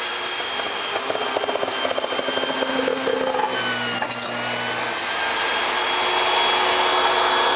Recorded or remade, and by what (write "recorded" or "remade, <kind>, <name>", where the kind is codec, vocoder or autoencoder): recorded